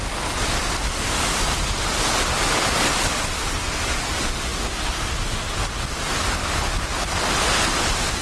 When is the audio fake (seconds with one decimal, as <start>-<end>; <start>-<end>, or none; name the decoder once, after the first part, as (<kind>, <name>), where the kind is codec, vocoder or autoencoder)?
none